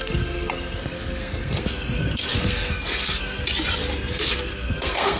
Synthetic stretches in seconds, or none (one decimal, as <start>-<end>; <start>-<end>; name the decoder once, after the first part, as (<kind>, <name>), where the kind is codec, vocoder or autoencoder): 0.0-3.2 (codec, SNAC); 4.1-5.2